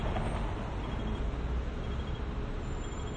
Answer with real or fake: real